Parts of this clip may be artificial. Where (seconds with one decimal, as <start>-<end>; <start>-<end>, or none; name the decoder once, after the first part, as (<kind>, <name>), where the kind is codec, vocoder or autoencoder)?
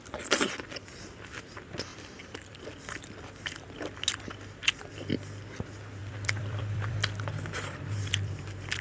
1.9-2.6 (vocoder, BigVGAN v2); 6.0-8.4